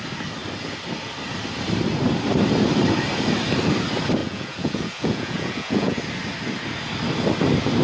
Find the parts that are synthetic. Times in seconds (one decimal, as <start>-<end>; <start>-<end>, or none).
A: 4.2-6.0